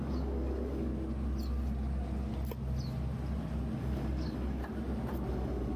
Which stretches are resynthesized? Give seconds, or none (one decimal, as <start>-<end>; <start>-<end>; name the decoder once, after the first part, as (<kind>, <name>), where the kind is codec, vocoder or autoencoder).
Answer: 0.0-0.9 (codec, DAC); 3.8-4.6; 5.3-5.8